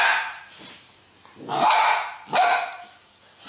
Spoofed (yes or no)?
no